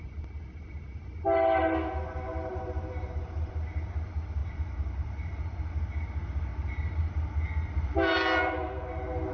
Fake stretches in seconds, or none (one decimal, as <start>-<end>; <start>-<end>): 2.5-3.5; 4.4-5.7; 6.5-7.1